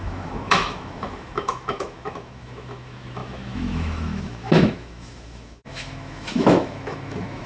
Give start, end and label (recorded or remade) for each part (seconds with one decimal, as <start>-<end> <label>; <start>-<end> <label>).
0.0-7.5 remade